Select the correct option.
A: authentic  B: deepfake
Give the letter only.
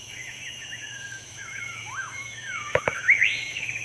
B